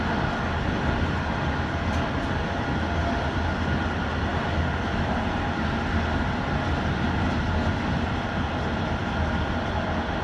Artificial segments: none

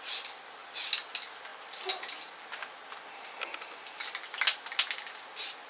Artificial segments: none

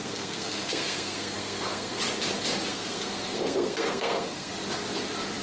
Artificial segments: 0.0-2.0 (codec, SNAC); 2.7-4.5

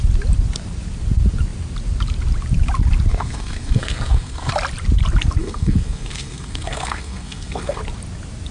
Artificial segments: 3.1-4.5 (codec, SNAC); 5.4-7.8